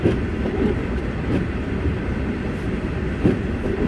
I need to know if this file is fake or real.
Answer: fake